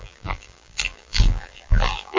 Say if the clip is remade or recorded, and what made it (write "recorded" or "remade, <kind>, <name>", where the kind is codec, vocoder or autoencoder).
remade, vocoder, BigVGAN v2